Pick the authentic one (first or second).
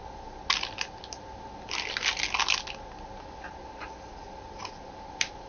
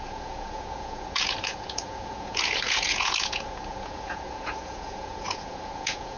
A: first